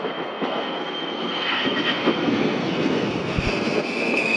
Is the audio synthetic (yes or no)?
yes